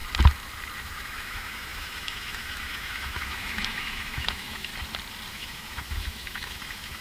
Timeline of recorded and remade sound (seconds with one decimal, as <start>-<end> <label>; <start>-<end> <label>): 0.0-0.8 recorded; 0.8-4.7 remade; 4.7-5.3 recorded; 5.3-7.0 remade